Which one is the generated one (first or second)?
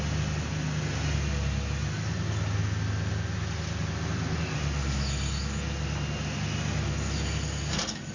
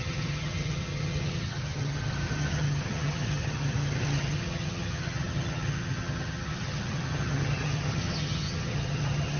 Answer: second